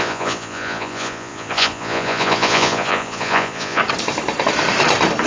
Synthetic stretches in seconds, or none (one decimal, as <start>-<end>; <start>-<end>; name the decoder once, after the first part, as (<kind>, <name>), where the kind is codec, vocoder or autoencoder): 0.0-3.8 (vocoder, Vocos)